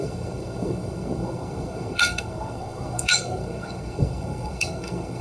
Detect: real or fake fake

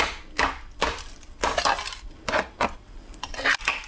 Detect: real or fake real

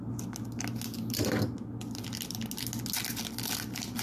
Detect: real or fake real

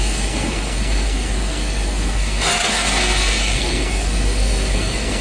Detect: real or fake fake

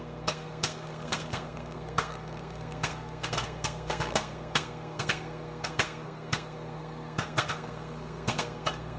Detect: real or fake fake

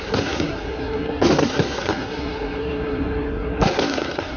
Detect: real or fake fake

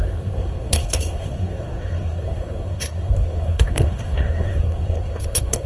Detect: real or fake fake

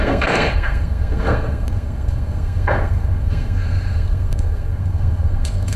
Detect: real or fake fake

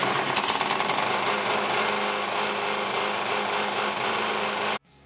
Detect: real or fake real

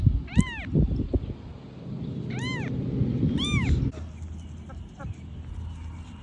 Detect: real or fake real